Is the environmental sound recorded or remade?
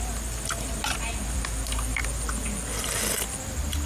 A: recorded